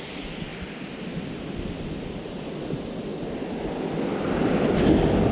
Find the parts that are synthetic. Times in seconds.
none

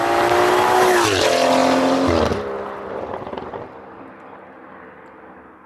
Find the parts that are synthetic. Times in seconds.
none

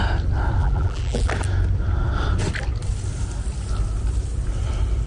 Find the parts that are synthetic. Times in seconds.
0.6-1.3 (vocoder, BigVGAN v2)

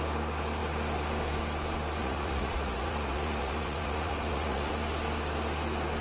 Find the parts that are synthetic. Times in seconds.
2.0-4.7 (vocoder, Vocos)

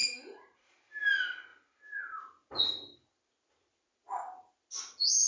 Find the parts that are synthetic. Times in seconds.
0.0-0.7 (vocoder, Vocos)